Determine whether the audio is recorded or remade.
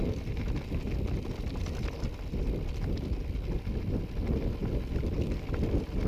recorded